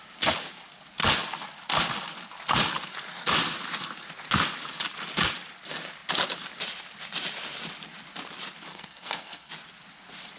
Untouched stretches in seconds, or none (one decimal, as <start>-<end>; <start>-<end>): 0.0-8.7; 9.5-10.4